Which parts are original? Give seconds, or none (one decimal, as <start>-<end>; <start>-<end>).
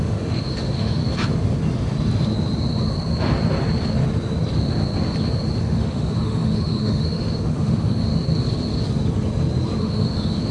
1.0-5.6; 8.1-9.8